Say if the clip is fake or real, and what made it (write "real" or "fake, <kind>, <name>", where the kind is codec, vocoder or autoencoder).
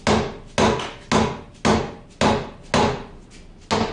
real